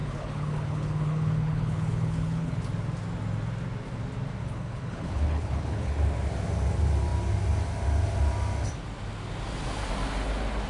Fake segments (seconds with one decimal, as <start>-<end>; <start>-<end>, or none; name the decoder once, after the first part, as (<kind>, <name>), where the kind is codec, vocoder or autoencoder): 0.0-2.6 (codec, HILCodec); 4.4-6.0